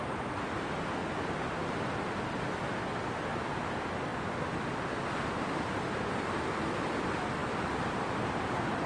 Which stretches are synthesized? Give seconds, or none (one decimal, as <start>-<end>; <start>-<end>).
none